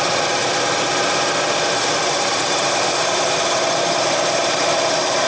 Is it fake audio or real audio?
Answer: fake